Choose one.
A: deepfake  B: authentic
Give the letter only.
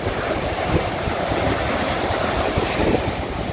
A